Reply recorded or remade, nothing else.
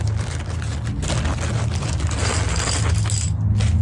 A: recorded